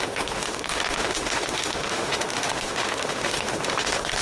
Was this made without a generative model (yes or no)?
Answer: no